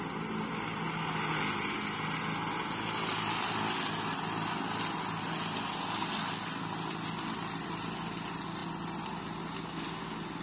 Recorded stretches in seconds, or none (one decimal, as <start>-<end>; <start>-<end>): 0.0-10.4